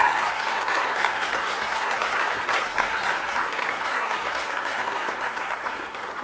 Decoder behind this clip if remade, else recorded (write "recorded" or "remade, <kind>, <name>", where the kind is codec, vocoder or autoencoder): remade, codec, SNAC